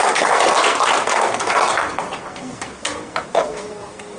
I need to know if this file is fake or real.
fake